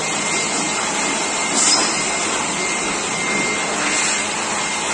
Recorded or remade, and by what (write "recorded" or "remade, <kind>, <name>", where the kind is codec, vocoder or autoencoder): recorded